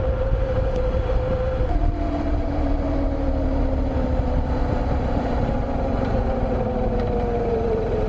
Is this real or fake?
fake